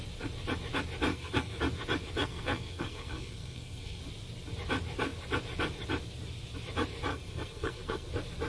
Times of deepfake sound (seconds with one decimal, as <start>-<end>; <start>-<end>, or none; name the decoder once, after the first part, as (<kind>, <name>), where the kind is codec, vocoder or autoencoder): 1.1-1.6 (codec, SNAC); 2.2-4.0; 7.1-8.1